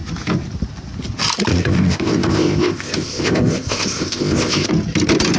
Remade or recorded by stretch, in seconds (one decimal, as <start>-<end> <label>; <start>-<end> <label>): 0.0-1.5 recorded; 1.5-4.7 remade; 4.7-5.4 recorded